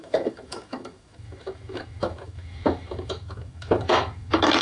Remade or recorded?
remade